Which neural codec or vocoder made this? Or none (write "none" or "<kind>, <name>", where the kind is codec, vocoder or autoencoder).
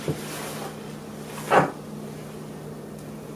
none